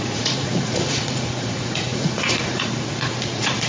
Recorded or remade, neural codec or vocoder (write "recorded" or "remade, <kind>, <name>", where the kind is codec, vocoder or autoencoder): remade, vocoder, Vocos